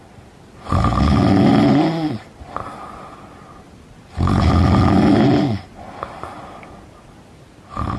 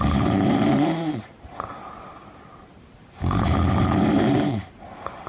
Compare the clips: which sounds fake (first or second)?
second